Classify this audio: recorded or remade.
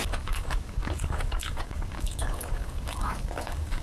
remade